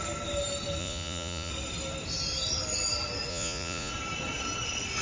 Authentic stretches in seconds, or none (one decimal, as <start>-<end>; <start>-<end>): 0.0-0.8; 1.5-3.3; 3.9-5.0